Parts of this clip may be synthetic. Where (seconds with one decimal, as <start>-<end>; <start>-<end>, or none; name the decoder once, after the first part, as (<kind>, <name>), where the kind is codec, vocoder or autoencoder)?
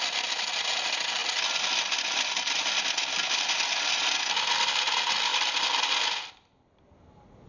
none